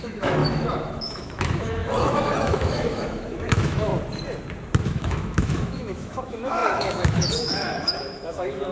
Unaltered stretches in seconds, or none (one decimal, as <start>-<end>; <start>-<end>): 3.9-4.9